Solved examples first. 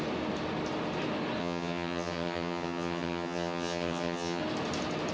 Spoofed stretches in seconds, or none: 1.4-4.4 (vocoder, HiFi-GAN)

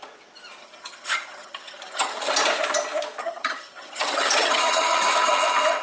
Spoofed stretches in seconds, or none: 0.6-2.3 (vocoder, HiFi-GAN); 3.2-5.3

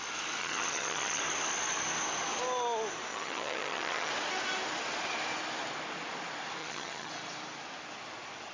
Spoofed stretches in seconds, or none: 0.4-1.2 (vocoder, HiFi-GAN); 3.1-4.1; 6.6-7.1

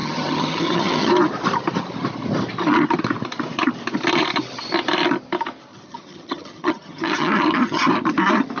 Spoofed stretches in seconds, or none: 0.0-1.1 (vocoder, HiFi-GAN); 5.7-7.9

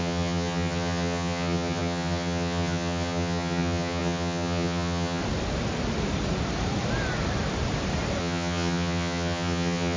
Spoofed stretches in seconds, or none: 0.0-5.2 (vocoder, HiFi-GAN); 8.2-10.0

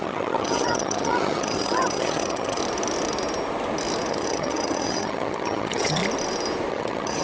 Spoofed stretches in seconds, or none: 0.0-2.6 (vocoder, HiFi-GAN); 4.1-6.0; 6.7-7.2

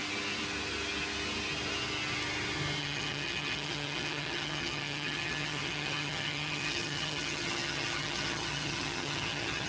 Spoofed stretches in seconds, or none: 2.8-9.7 (vocoder, HiFi-GAN)